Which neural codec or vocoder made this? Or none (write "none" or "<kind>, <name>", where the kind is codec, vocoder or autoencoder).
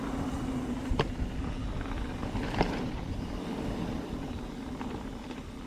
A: none